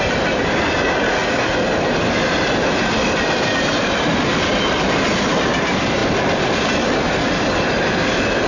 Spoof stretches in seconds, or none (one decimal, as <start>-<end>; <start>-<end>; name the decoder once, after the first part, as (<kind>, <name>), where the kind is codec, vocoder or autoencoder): none